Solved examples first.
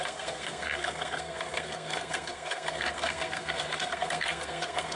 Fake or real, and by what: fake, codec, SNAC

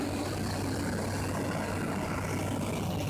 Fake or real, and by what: real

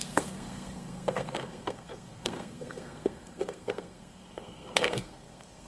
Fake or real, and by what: fake, codec, SNAC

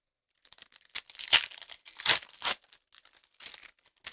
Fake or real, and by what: real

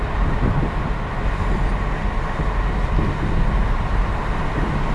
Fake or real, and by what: real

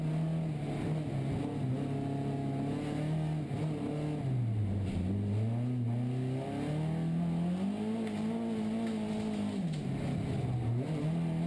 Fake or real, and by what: real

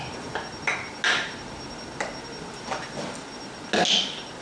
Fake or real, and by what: real